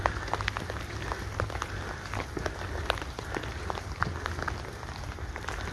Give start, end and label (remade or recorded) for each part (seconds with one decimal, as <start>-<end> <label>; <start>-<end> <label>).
0.0-5.7 recorded